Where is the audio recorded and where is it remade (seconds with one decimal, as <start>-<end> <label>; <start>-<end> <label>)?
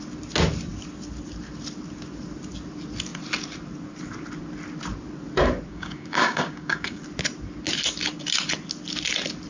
0.0-5.7 recorded; 5.7-7.0 remade; 7.0-9.5 recorded